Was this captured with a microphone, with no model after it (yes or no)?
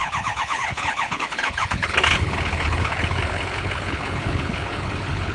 no